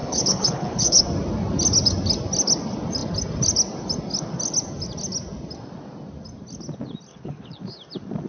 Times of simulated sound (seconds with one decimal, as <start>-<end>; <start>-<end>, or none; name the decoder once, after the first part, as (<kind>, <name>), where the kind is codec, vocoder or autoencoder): 0.0-1.0 (codec, HILCodec); 7.1-7.6